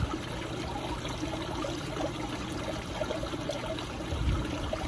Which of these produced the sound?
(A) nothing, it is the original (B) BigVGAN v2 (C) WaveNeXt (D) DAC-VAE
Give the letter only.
A